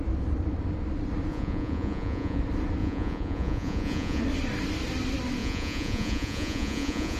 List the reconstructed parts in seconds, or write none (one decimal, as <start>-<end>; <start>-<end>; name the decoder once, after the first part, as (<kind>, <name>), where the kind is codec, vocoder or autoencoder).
1.3-2.4 (vocoder, Vocos); 2.8-4.2; 5.4-7.2